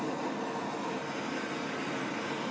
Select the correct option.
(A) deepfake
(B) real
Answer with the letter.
B